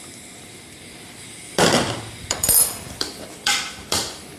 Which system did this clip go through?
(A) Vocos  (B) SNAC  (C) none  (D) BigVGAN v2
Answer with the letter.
D